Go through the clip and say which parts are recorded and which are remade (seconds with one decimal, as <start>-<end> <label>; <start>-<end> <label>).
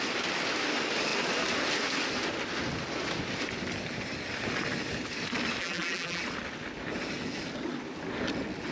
0.0-5.6 recorded; 5.6-6.2 remade; 6.2-8.7 recorded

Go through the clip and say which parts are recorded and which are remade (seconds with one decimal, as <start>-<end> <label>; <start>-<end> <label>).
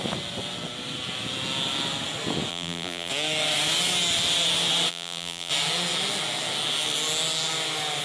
0.0-2.5 recorded; 2.5-3.1 remade; 3.1-4.9 recorded; 4.9-5.5 remade; 5.5-8.0 recorded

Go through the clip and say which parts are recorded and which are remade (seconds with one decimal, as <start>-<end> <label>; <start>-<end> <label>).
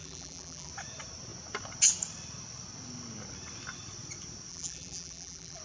0.0-0.7 remade; 0.7-4.5 recorded; 4.5-5.6 remade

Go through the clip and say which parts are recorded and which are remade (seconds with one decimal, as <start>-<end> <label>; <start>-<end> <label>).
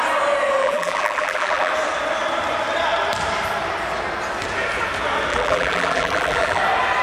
0.0-0.6 recorded; 0.6-1.7 remade; 1.7-5.3 recorded; 5.3-6.6 remade; 6.6-7.0 recorded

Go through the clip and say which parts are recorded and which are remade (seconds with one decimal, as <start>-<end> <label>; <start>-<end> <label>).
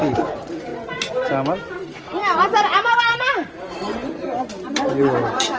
0.0-0.7 remade; 0.7-1.7 recorded; 1.7-2.2 remade; 2.2-3.0 recorded; 3.0-5.6 remade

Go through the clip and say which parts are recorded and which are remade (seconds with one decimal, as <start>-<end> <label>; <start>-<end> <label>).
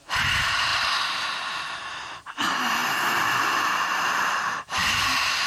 0.0-0.7 remade; 0.7-1.9 recorded; 1.9-2.8 remade; 2.8-3.4 recorded; 3.4-4.8 remade; 4.8-5.5 recorded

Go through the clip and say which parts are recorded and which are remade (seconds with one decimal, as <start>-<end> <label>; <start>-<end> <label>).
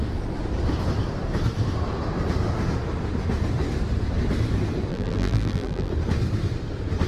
0.0-4.9 recorded; 4.9-5.9 remade; 5.9-7.1 recorded